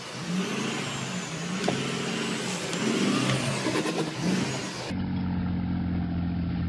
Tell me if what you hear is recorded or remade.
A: recorded